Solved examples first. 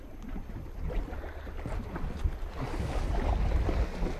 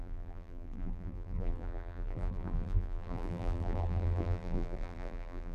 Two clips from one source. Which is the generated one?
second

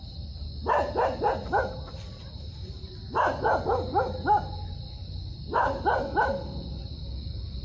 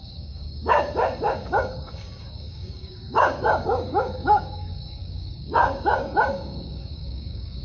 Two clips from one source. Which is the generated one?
second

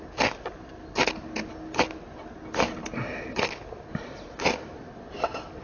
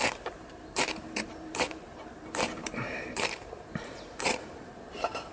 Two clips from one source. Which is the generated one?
second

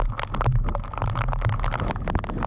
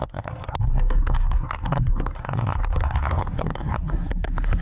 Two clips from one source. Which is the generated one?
second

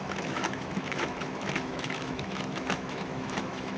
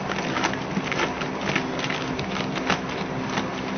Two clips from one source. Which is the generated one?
first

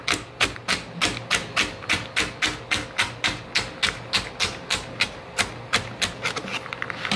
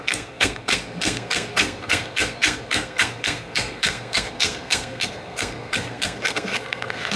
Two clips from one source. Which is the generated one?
second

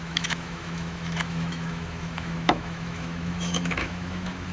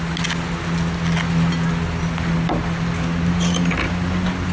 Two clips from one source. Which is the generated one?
first